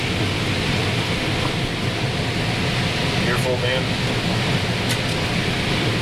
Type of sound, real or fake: real